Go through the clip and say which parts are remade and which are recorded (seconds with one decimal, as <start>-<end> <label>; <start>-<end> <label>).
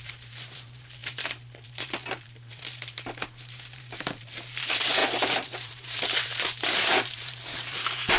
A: 0.0-8.2 remade